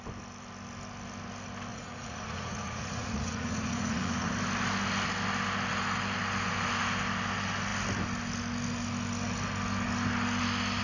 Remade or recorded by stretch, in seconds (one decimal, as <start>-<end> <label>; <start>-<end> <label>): 0.0-1.7 recorded; 1.7-4.3 remade; 4.3-10.8 recorded